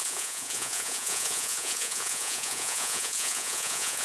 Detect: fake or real fake